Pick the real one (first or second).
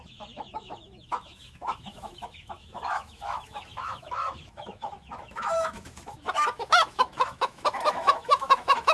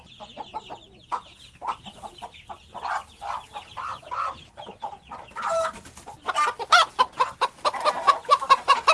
second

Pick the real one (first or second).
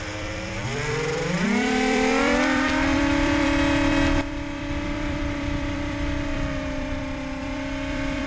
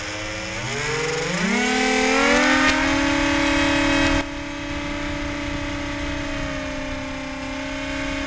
second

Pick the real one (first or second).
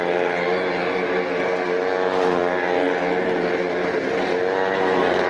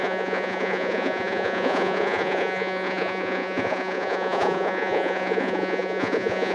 first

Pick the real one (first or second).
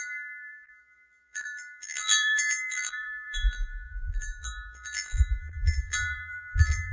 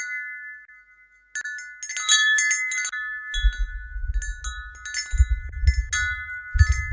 second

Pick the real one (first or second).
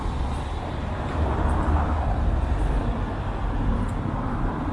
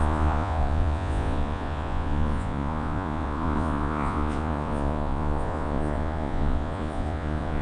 first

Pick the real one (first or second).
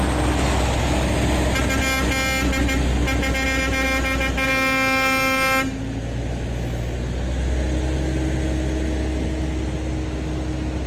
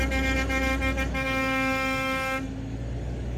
first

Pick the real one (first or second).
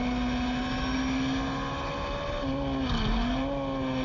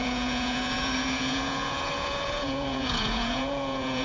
first